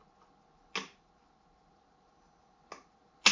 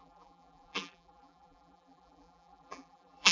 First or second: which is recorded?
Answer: first